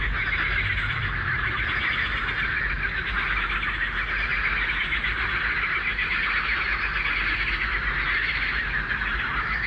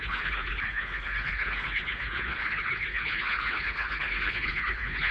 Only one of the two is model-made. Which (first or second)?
second